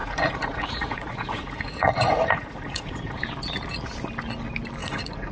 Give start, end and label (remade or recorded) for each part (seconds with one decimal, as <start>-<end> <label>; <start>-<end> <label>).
0.0-3.2 remade; 3.2-4.8 recorded; 4.8-5.3 remade